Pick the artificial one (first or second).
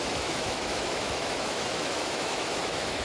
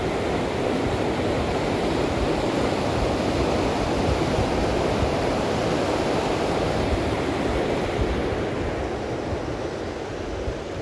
first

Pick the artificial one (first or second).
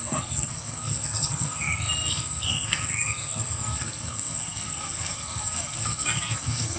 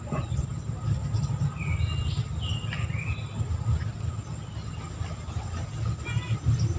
first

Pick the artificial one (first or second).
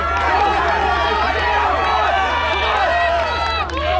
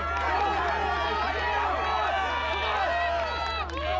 first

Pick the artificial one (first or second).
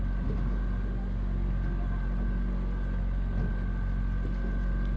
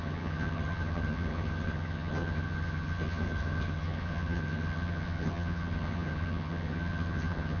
second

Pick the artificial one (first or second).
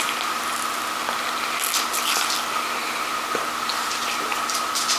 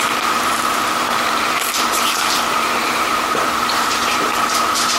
second